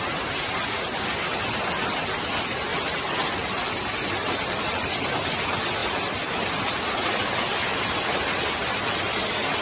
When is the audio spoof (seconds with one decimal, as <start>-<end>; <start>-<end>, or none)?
2.7-3.7; 4.2-4.9